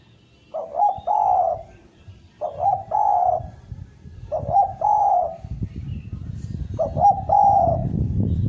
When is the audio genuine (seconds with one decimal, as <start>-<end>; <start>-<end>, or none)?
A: 0.0-1.8; 6.8-7.8